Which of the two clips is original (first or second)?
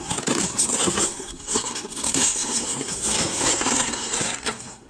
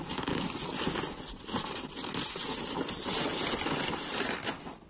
second